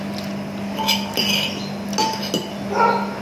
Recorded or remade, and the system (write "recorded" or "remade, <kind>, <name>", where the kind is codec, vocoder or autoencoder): recorded